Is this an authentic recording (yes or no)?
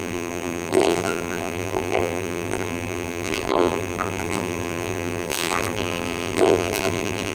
no